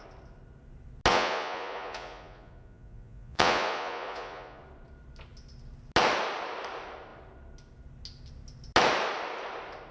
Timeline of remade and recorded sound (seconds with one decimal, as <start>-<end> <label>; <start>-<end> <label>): 0.0-1.1 recorded; 1.1-4.6 remade; 4.6-9.9 recorded

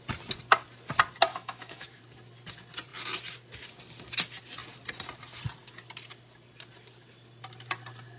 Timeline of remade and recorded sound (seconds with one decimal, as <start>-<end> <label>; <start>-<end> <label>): 0.0-1.3 recorded; 1.3-2.0 remade; 2.0-8.2 recorded

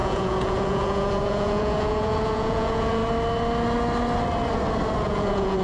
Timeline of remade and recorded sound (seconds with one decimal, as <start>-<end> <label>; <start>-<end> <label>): 0.0-3.0 remade; 3.0-5.0 recorded; 5.0-5.6 remade

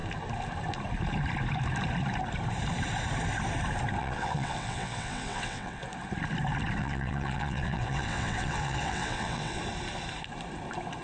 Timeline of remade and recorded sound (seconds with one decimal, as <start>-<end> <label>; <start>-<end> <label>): 0.0-4.0 recorded; 4.0-5.8 remade; 5.8-6.8 recorded; 6.8-9.6 remade; 9.6-11.0 recorded

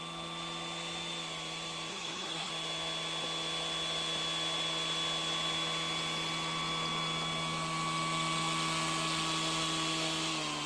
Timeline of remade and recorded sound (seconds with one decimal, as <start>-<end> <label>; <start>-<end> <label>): 0.0-1.9 recorded; 1.9-2.5 remade; 2.5-10.7 recorded